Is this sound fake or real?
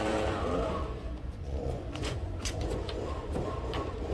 fake